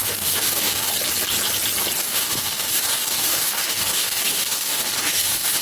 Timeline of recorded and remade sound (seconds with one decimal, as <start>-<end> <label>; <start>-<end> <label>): 0.0-0.9 remade; 0.9-2.0 recorded; 2.0-5.6 remade